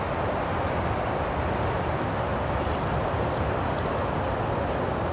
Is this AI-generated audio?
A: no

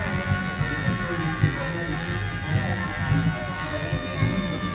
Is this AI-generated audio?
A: yes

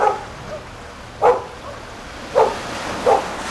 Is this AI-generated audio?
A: no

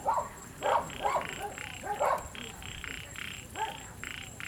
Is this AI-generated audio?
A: yes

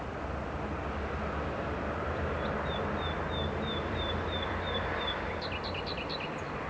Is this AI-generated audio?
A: yes